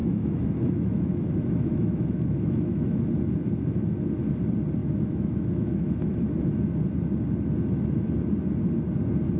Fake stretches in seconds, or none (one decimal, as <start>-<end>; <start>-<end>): 0.0-3.0; 4.8-6.4

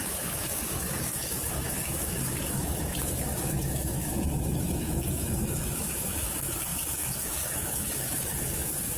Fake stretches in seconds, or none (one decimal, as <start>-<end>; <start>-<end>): 0.0-9.0

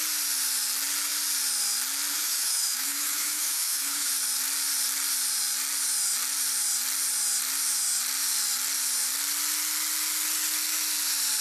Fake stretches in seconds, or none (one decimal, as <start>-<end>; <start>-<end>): 2.1-4.1

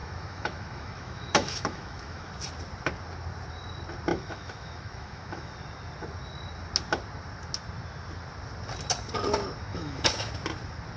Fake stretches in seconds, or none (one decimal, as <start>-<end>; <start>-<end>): 0.0-2.3; 4.1-5.5; 9.7-10.3

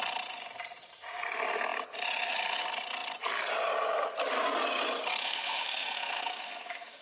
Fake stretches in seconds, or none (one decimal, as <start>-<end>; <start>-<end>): 5.2-7.0